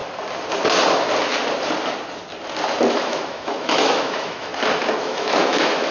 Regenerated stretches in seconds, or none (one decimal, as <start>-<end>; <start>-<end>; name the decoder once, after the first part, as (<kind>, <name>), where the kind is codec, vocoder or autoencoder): 2.9-4.5 (autoencoder, DAC-VAE); 5.0-5.9